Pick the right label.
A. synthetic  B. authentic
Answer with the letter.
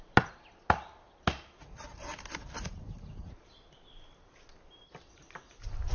B